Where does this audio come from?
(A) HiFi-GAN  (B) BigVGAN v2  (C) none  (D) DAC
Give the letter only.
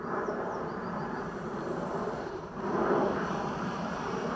B